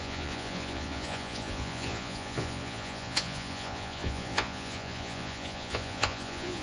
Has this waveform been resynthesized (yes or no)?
yes